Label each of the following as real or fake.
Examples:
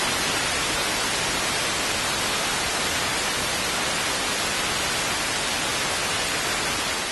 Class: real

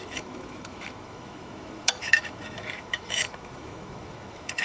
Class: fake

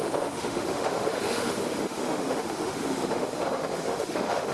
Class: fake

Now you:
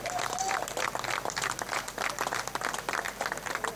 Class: real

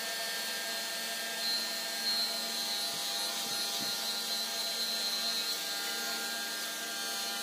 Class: real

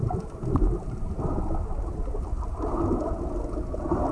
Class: real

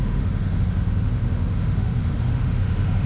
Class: fake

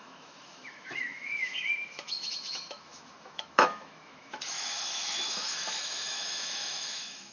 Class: fake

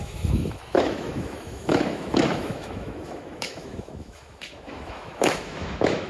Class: fake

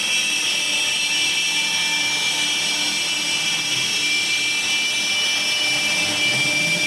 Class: real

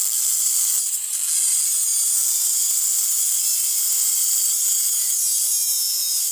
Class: real